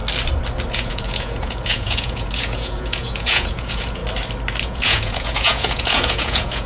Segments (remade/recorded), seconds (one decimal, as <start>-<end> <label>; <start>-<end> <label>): 0.0-0.7 recorded; 0.7-4.0 remade; 4.0-4.6 recorded; 4.6-6.7 remade